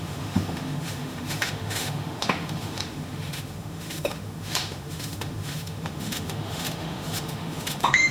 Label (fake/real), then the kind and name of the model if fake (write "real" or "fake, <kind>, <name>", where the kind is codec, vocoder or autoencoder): fake, autoencoder, DAC-VAE